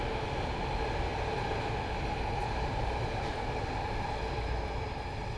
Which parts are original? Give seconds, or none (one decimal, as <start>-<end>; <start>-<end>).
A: 0.0-5.4

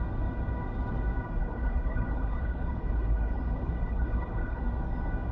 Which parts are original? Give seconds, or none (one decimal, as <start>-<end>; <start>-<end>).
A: 0.0-1.4; 4.6-5.3